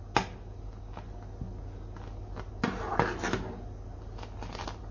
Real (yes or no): yes